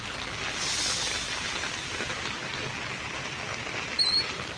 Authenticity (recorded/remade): recorded